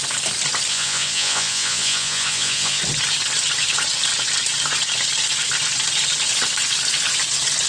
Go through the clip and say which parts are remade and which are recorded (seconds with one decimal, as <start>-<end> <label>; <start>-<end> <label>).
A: 0.0-0.7 recorded; 0.7-2.8 remade; 2.8-7.7 recorded